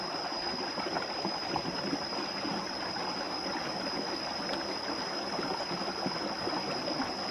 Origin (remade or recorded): recorded